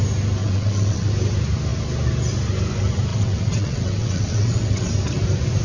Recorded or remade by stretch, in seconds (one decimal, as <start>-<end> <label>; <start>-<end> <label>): 0.0-0.4 recorded; 0.4-1.1 remade; 1.1-3.1 recorded; 3.1-4.9 remade; 4.9-5.6 recorded